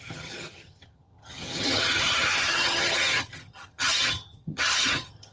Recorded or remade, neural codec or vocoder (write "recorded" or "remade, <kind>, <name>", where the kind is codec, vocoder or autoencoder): remade, vocoder, HiFi-GAN